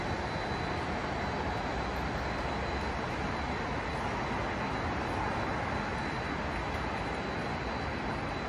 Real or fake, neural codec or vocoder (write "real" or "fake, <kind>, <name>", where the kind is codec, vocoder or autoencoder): real